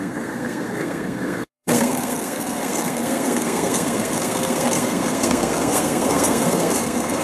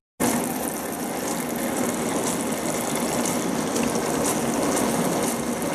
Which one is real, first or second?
second